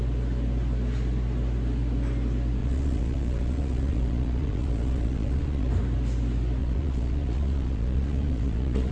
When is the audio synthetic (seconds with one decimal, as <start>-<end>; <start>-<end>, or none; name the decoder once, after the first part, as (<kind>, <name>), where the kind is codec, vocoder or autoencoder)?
2.6-5.7 (vocoder, Vocos); 6.6-8.9